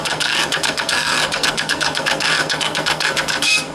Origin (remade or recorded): remade